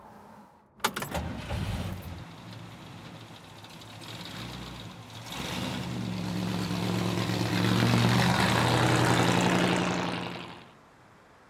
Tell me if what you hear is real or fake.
real